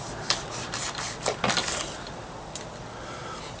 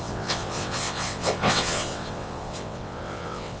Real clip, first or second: first